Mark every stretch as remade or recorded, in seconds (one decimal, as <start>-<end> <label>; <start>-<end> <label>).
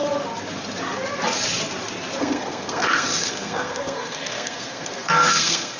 0.0-2.2 recorded; 2.2-5.8 remade